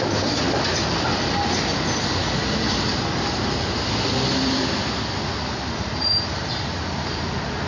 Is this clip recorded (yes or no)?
yes